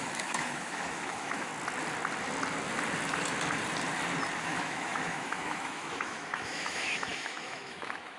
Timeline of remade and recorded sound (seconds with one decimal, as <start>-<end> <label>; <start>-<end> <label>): 0.0-1.5 remade; 1.5-4.4 recorded; 4.4-8.2 remade